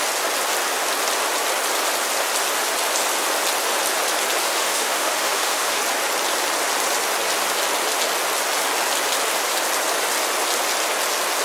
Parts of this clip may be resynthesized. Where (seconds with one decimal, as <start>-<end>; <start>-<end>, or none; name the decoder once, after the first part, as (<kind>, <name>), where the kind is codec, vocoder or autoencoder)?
4.4-5.8 (autoencoder, DAC-VAE)

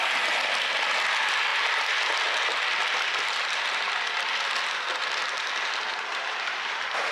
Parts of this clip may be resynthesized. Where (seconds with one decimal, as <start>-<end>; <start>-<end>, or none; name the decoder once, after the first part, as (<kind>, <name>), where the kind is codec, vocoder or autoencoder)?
none